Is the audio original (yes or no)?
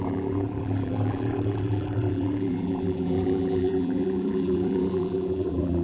no